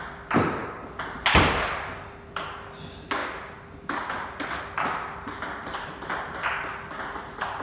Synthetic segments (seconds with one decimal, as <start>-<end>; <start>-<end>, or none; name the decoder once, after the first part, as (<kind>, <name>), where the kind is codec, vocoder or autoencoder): none